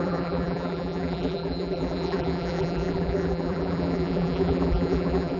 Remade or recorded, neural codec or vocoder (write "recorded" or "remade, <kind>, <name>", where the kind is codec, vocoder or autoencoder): remade, vocoder, BigVGAN v2